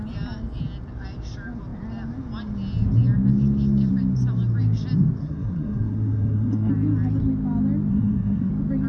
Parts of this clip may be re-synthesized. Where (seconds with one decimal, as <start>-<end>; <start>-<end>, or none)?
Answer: 5.2-6.7; 7.9-8.5